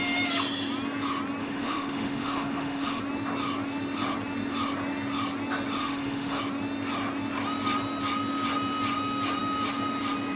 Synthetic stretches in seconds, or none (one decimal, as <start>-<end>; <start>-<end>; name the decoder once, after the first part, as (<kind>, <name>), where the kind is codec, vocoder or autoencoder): 1.4-3.0 (autoencoder, DAC-VAE); 5.8-6.4